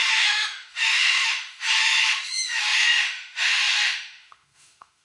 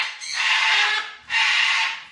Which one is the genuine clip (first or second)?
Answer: second